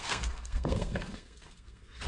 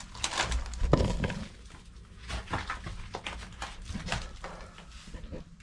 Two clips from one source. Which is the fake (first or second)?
first